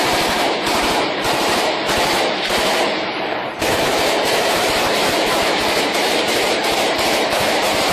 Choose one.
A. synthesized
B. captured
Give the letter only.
A